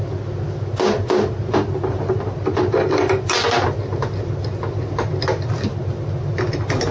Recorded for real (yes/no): yes